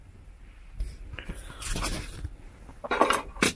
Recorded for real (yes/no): yes